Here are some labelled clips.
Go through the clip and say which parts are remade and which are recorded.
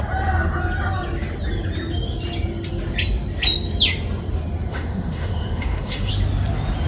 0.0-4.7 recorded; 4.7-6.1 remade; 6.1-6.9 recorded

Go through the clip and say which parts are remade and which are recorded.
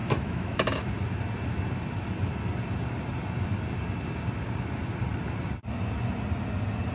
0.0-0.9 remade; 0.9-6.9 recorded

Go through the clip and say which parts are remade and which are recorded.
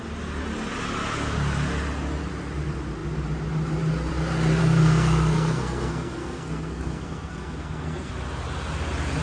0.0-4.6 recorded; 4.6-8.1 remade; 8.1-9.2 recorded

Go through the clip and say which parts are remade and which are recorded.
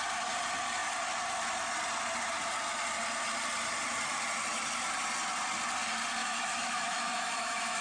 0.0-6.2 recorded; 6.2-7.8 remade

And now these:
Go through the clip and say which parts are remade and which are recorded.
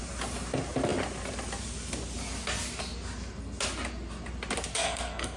0.0-4.7 recorded; 4.7-5.4 remade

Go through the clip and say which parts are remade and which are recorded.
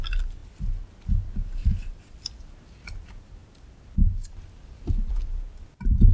0.0-6.1 recorded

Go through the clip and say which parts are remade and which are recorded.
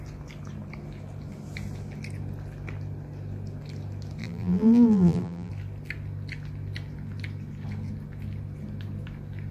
0.0-4.2 recorded; 4.2-5.5 remade; 5.5-9.5 recorded